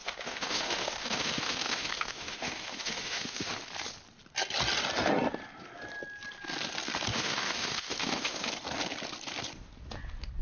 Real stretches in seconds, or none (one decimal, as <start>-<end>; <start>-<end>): 3.5-7.1; 8.5-10.4